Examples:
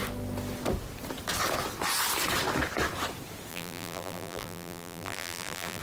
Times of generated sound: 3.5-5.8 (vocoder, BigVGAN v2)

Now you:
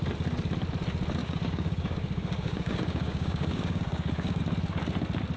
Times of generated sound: 1.2-4.4 (codec, DAC)

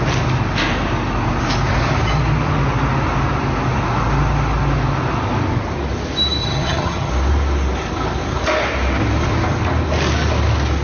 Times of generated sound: 6.4-7.1 (vocoder, HiFi-GAN)

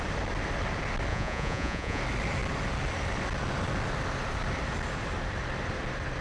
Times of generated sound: 1.1-2.0 (vocoder, Vocos)

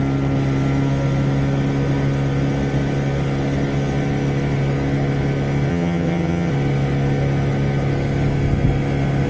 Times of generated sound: 5.7-6.5 (vocoder, HiFi-GAN)

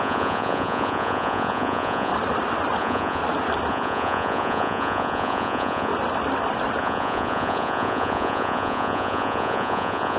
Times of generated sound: 0.0-2.1 (vocoder, Vocos); 2.8-3.2; 3.7-5.9; 6.8-10.2

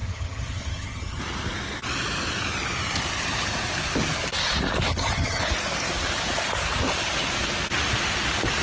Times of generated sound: 0.0-1.2 (vocoder, HiFi-GAN); 4.9-5.4

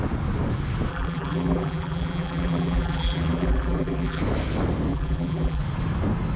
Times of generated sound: 0.9-4.2 (vocoder, BigVGAN v2); 4.9-5.6